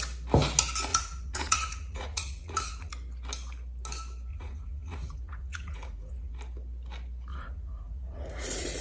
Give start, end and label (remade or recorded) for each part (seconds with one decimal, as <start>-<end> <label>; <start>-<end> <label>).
0.0-0.9 recorded; 0.9-2.9 remade; 2.9-4.3 recorded; 4.3-6.3 remade; 6.3-7.3 recorded; 7.3-8.8 remade